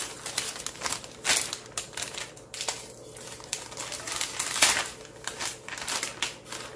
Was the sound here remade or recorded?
recorded